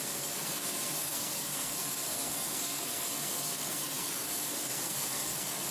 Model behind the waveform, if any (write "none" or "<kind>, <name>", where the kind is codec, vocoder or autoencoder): codec, SNAC